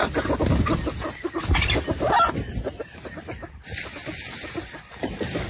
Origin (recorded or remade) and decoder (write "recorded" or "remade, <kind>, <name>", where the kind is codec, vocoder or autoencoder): recorded